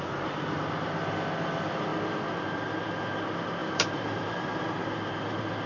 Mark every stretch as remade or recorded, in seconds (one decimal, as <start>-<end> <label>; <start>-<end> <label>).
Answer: 0.0-3.6 recorded; 3.6-4.6 remade; 4.6-5.7 recorded